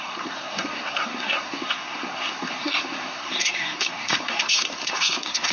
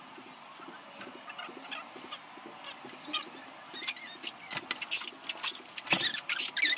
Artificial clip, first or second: first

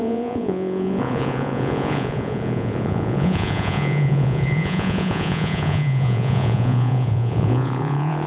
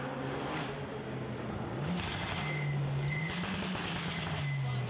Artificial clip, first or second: first